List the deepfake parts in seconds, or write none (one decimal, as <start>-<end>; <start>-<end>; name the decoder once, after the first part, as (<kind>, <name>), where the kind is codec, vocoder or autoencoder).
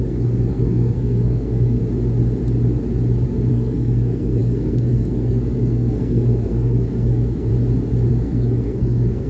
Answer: 0.0-1.8 (codec, SNAC); 3.5-7.5; 8.1-9.3